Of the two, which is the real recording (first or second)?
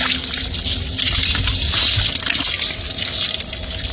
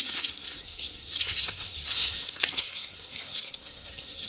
first